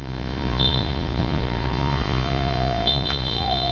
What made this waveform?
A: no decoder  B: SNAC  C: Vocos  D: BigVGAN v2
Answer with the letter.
C